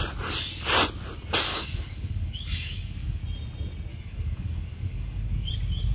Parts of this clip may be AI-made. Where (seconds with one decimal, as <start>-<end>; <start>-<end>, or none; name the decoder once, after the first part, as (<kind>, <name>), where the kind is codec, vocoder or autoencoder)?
1.5-3.2 (codec, DAC); 3.9-5.5